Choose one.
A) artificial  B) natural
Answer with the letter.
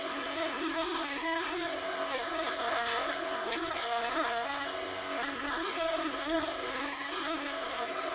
A